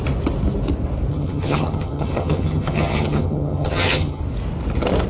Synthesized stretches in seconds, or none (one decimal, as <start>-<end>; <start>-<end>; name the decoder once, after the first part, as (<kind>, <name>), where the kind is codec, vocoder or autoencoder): 1.1-4.2 (vocoder, HiFi-GAN)